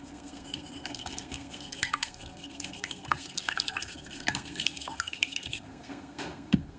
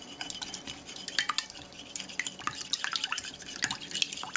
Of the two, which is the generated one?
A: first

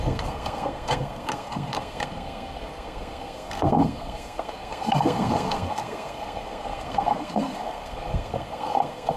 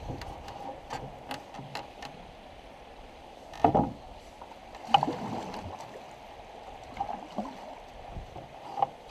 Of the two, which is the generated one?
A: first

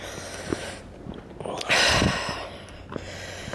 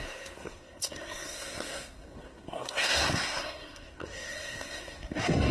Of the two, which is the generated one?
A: second